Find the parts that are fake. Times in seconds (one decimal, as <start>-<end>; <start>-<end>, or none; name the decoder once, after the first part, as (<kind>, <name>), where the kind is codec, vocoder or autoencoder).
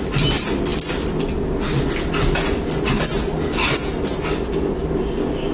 none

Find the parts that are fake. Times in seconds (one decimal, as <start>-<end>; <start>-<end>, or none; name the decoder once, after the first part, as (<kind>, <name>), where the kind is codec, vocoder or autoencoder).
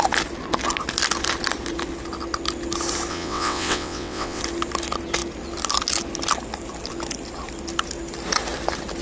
3.1-4.4 (vocoder, WaveNeXt)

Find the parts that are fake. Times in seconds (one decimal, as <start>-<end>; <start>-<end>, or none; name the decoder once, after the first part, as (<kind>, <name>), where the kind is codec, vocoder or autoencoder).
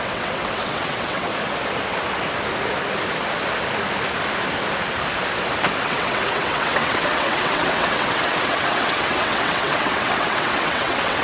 0.0-1.3 (vocoder, WaveNeXt); 5.8-11.2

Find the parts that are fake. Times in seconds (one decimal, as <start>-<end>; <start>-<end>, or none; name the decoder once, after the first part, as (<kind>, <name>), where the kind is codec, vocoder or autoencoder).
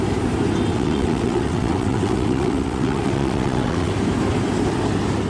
0.7-3.9 (vocoder, WaveNeXt)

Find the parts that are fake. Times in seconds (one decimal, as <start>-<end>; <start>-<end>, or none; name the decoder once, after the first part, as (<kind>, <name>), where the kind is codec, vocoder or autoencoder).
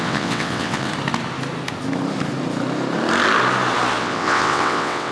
0.0-0.9 (vocoder, WaveNeXt); 4.0-5.1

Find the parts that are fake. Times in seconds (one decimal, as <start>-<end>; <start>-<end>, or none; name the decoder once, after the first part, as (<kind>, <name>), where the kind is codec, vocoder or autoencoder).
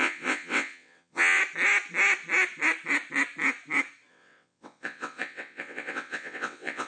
0.0-1.4 (vocoder, WaveNeXt); 4.1-6.9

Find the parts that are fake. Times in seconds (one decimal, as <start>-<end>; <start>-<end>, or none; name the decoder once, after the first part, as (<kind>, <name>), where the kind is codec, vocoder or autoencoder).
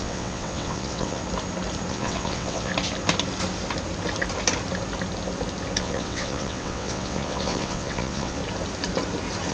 0.0-1.2 (vocoder, WaveNeXt); 1.9-2.7; 5.8-8.4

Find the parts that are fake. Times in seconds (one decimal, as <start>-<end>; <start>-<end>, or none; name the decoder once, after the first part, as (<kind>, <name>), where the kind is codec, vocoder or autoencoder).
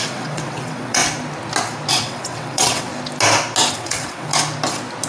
0.0-1.0 (vocoder, WaveNeXt); 1.9-2.9; 3.7-4.3